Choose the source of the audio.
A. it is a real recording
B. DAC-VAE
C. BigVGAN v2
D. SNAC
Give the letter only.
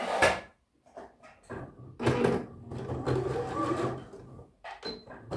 A